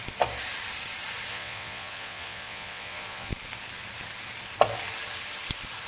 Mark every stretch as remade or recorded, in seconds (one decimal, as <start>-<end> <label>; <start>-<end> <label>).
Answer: 0.0-1.3 recorded; 1.3-3.3 remade; 3.3-5.9 recorded